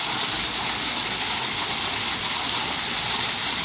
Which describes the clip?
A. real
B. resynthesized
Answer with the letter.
A